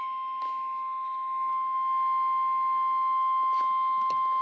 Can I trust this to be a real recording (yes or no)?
yes